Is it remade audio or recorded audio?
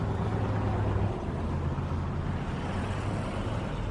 recorded